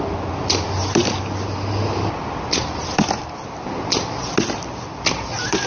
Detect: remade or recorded recorded